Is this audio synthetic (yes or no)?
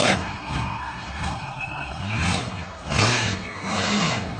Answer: yes